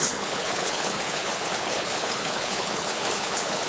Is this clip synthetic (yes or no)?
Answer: yes